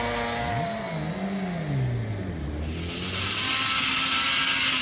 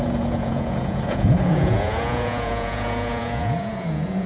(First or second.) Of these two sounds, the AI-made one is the second